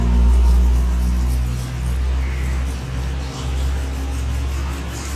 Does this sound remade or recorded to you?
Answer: recorded